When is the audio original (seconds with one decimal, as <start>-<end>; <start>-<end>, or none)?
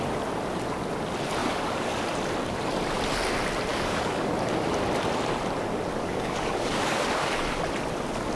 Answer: 0.0-1.4; 2.0-3.7; 4.3-6.0; 7.6-8.4